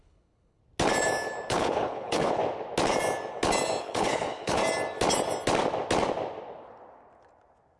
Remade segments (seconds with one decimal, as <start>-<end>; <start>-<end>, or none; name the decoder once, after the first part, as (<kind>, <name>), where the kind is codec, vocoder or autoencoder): 0.0-0.6 (codec, HILCodec); 1.5-2.4; 3.8-4.6